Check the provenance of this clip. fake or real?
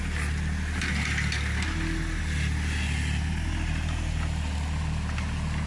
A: real